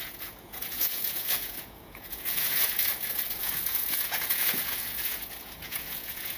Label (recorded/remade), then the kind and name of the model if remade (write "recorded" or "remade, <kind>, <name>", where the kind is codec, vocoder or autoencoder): remade, vocoder, Vocos